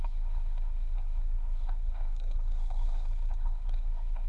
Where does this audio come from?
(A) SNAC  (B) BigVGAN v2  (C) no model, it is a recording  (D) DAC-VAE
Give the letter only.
A